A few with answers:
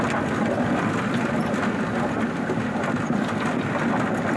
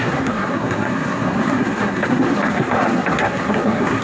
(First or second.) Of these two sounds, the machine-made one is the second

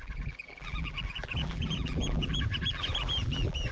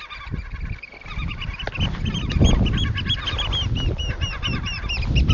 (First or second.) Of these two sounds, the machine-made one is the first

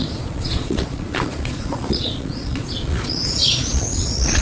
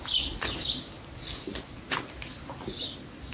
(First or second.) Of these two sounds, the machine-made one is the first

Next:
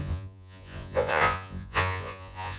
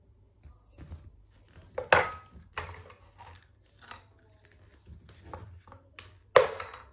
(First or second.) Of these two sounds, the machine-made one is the first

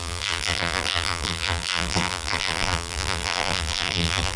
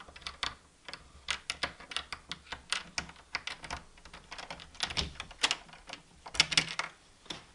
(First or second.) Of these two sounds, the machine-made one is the first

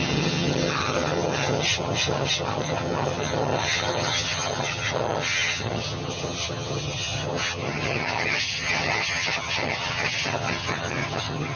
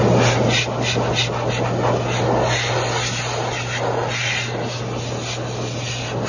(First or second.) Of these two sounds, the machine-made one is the first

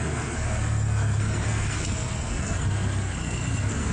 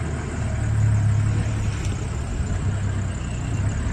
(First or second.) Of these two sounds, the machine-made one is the first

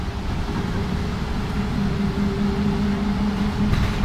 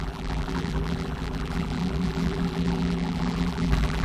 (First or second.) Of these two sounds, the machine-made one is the second